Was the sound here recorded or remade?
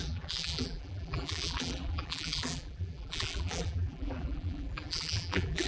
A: remade